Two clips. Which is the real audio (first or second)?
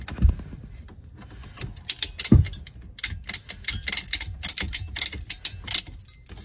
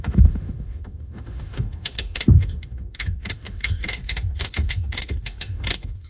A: first